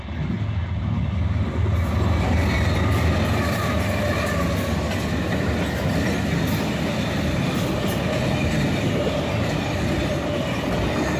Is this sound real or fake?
real